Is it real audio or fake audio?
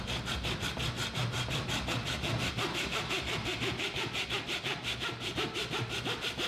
real